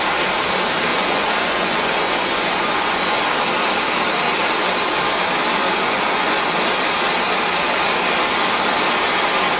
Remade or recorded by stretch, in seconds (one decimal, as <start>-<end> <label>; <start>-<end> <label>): 0.0-0.9 recorded; 0.9-3.2 remade; 3.2-5.6 recorded; 5.6-6.5 remade; 6.5-9.6 recorded